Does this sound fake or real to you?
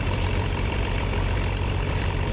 fake